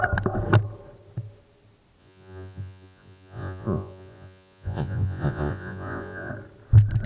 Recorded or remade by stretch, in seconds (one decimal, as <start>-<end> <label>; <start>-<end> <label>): 0.0-2.0 recorded; 2.0-6.3 remade; 6.3-7.1 recorded